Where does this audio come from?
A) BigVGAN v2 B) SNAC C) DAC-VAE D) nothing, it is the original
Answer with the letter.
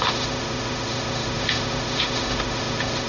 C